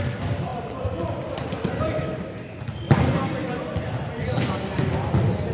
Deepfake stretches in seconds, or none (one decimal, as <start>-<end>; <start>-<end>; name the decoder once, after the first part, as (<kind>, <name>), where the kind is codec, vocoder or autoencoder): none

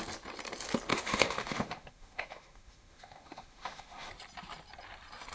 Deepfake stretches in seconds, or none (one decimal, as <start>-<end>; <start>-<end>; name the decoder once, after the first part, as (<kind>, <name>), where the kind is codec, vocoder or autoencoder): 0.9-4.1 (autoencoder, DAC-VAE)

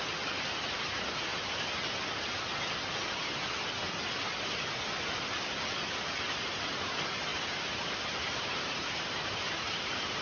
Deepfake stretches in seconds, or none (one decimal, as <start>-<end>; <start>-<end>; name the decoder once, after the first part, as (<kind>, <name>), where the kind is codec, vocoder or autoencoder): 7.3-10.2 (vocoder, BigVGAN v2)